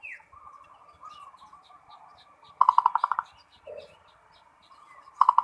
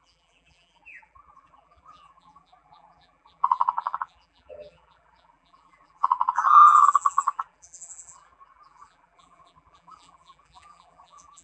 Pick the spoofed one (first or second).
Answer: second